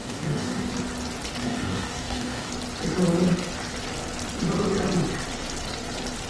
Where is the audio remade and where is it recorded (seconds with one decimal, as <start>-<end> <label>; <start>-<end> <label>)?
0.0-0.6 remade; 0.6-1.4 recorded; 1.4-2.5 remade; 2.5-6.3 recorded